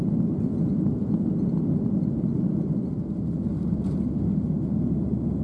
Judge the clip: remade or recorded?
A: recorded